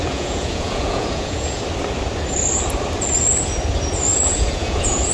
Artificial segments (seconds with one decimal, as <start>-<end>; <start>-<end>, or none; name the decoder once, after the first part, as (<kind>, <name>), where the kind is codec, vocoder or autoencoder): 0.0-1.6 (vocoder, Vocos); 4.1-5.1